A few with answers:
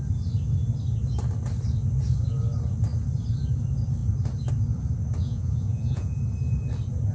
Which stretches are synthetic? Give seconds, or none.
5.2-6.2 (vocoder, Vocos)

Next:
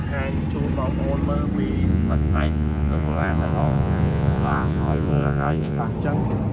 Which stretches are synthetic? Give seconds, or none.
1.9-5.8 (vocoder, Vocos)

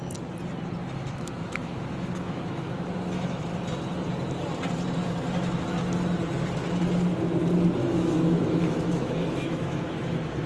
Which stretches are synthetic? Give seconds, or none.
0.8-3.4 (autoencoder, DAC-VAE); 7.8-10.5

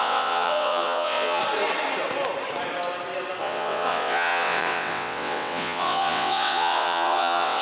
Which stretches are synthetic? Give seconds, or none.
0.0-1.4 (vocoder, WaveNeXt); 3.4-7.6

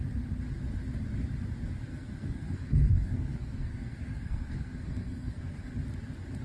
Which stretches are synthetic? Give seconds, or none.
1.9-5.7 (codec, SNAC)

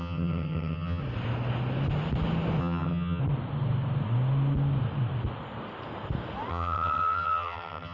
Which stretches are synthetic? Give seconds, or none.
0.0-1.0 (vocoder, HiFi-GAN); 2.6-3.2; 6.5-7.9